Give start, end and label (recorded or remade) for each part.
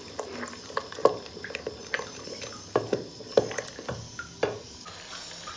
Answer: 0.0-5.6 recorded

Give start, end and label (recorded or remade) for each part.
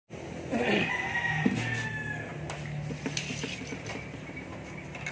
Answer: 0.0-5.1 recorded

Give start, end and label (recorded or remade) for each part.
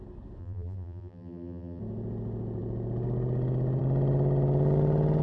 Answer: 0.0-0.4 recorded; 0.4-1.8 remade; 1.8-5.2 recorded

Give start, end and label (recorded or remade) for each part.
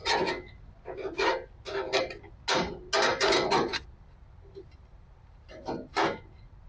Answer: 0.0-3.1 recorded; 3.1-6.2 remade; 6.2-6.7 recorded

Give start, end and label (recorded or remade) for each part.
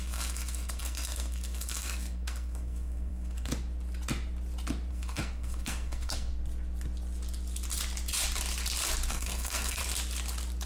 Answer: 0.0-3.5 remade; 3.5-4.9 recorded; 4.9-6.3 remade; 6.3-9.1 recorded; 9.1-9.8 remade; 9.8-10.7 recorded